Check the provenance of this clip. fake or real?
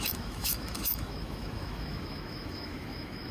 fake